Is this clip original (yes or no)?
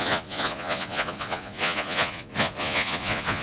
no